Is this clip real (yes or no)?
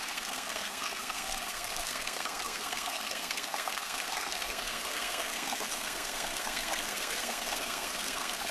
no